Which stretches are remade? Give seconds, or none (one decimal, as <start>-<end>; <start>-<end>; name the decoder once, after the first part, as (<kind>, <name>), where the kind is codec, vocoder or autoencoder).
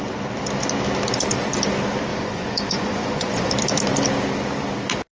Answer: 2.1-3.5 (vocoder, Vocos)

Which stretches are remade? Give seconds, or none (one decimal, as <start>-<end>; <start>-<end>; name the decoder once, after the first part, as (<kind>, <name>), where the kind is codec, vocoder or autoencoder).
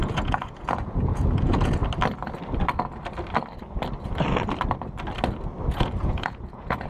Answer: 0.0-1.8 (vocoder, Vocos); 5.7-6.9